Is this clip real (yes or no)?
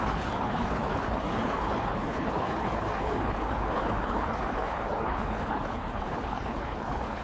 no